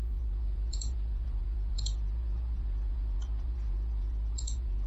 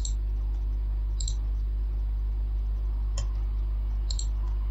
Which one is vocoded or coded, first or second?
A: first